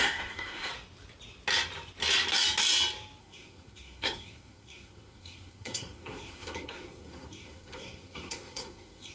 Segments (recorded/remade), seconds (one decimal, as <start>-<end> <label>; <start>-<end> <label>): 0.0-0.7 remade; 0.7-3.2 recorded; 3.2-9.1 remade